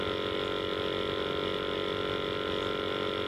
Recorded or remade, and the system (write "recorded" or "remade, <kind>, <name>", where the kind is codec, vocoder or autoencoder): recorded